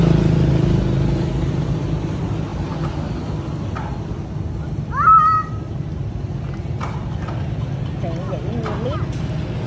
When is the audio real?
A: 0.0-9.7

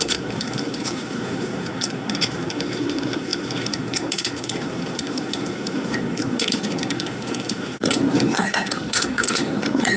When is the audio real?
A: none